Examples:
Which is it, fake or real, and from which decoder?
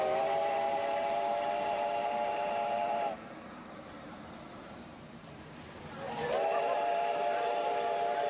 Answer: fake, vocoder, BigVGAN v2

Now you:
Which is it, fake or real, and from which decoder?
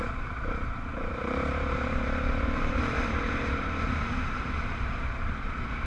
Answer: fake, vocoder, BigVGAN v2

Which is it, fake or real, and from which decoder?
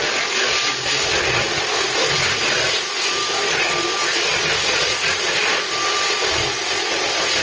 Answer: real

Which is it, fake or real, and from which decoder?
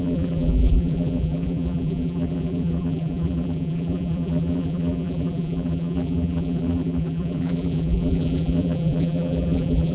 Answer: fake, vocoder, BigVGAN v2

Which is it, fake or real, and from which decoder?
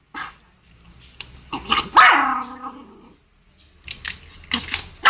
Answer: real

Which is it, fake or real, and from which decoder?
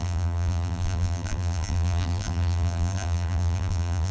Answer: fake, vocoder, BigVGAN v2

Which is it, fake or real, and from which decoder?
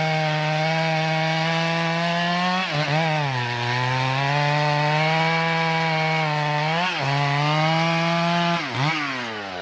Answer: real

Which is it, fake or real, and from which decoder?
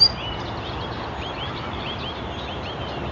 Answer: real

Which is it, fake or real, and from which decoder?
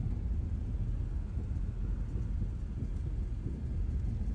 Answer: real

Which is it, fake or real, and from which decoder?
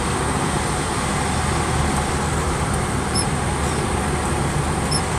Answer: fake, vocoder, BigVGAN v2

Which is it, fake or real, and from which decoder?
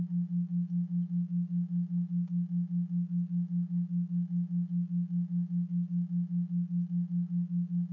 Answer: real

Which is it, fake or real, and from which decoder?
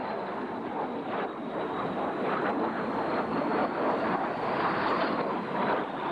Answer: fake, vocoder, BigVGAN v2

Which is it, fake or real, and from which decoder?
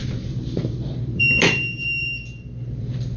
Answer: fake, vocoder, BigVGAN v2